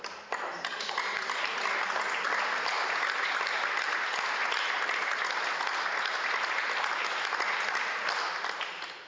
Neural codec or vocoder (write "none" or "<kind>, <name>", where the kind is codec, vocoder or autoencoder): none